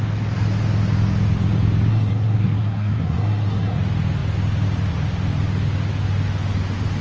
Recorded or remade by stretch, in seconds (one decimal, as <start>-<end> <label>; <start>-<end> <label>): 0.0-1.9 recorded; 1.9-3.8 remade; 3.8-7.0 recorded